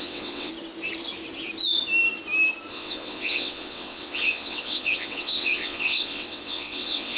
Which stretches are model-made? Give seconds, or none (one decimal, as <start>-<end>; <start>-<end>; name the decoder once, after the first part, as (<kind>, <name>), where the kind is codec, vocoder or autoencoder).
0.0-0.5 (vocoder, WaveNeXt); 2.7-7.2